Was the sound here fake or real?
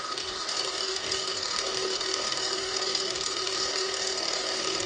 fake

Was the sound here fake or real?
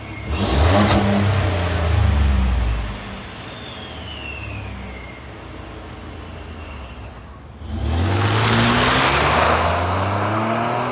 real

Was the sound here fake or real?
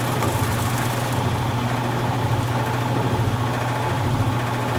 real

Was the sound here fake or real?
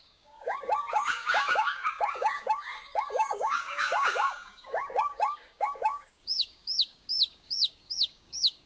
fake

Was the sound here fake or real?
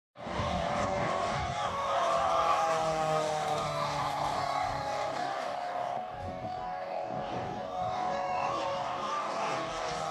fake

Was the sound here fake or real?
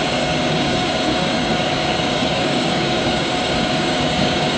fake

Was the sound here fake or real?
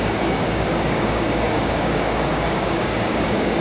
fake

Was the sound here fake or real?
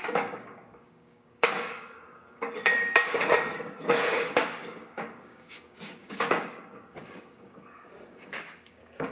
fake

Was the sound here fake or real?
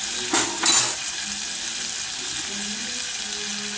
real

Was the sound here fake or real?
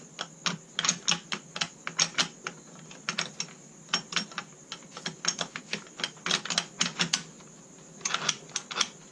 real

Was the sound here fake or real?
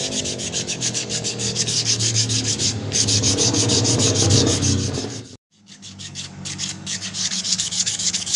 fake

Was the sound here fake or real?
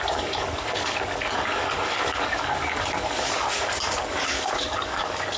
fake